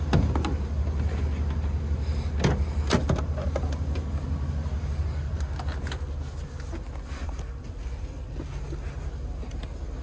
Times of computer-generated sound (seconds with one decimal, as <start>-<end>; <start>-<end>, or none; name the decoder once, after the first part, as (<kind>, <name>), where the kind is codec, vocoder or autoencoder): none